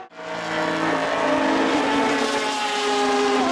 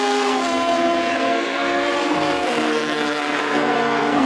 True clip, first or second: first